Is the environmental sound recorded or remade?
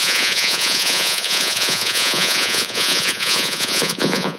remade